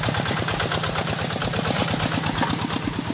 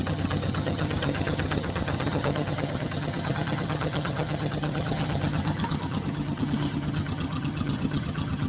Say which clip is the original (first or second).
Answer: first